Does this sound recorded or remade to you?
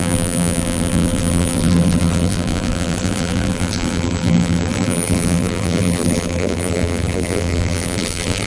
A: remade